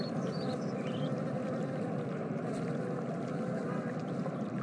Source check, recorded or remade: recorded